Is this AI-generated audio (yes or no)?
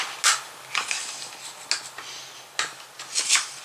no